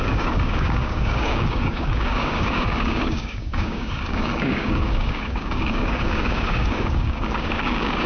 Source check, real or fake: fake